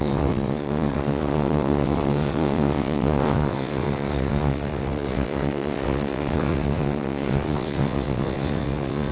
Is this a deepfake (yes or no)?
yes